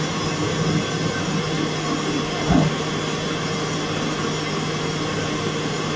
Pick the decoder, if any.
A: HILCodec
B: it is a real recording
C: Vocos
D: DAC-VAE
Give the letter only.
B